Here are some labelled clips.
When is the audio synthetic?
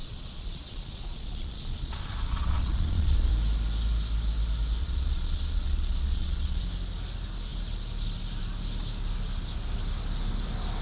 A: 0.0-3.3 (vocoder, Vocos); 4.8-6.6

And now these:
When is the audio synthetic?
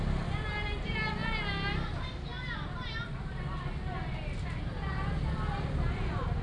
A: none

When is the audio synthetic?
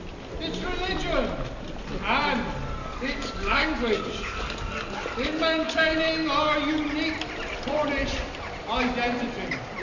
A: 2.8-6.0 (codec, DAC)